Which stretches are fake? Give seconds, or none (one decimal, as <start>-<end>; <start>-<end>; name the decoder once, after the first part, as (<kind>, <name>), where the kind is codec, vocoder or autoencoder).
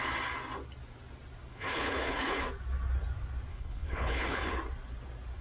1.5-2.4 (codec, HILCodec); 3.5-4.5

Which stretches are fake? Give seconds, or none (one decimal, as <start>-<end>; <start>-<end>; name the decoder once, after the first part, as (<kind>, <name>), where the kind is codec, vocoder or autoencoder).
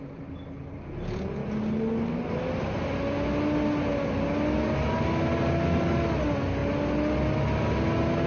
none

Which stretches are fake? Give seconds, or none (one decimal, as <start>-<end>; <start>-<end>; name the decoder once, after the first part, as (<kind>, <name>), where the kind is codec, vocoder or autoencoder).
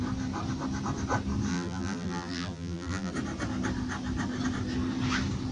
1.5-3.1 (vocoder, BigVGAN v2)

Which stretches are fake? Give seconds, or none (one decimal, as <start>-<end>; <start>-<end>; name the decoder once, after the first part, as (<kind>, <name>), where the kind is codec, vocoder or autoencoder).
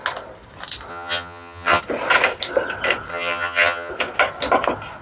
0.9-1.8 (vocoder, HiFi-GAN); 3.1-3.9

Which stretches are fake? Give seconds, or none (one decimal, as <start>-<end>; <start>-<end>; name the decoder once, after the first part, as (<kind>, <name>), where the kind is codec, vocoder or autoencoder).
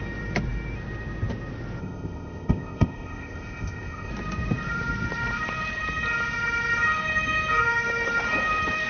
1.8-4.1 (codec, ZipCodec)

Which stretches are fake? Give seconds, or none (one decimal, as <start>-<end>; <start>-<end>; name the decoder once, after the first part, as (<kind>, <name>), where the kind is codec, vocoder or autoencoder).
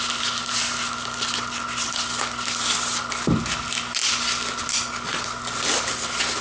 none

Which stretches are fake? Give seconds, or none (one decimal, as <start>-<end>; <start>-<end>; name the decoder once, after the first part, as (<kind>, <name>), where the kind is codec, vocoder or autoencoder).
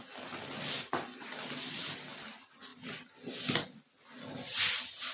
none